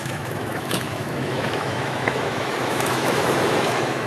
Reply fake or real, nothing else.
fake